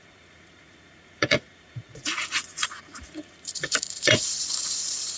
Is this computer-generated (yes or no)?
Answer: yes